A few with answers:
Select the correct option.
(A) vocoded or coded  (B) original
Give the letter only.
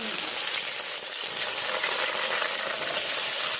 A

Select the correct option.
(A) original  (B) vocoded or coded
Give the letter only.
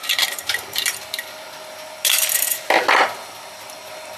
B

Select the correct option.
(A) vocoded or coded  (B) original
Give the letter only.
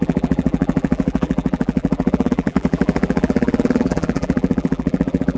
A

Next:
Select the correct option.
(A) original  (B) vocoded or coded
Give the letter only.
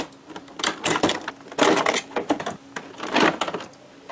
A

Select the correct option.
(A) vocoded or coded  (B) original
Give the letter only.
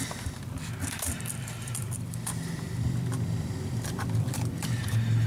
A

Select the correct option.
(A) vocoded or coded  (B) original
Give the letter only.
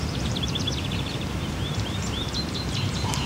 A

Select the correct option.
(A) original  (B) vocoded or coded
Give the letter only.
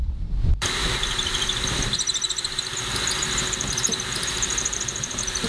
B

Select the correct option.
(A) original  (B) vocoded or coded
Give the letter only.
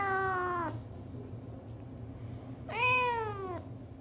A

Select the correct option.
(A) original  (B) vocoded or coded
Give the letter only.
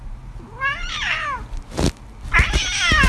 A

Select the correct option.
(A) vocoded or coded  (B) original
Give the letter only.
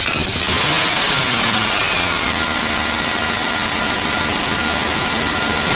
B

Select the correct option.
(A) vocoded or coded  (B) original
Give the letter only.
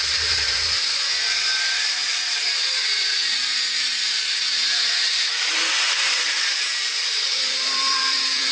A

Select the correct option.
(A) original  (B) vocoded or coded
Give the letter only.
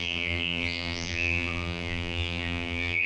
B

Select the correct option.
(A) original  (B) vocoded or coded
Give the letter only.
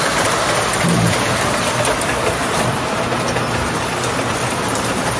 B